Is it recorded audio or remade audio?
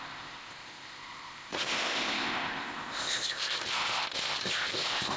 remade